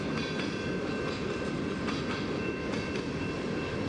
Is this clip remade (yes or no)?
no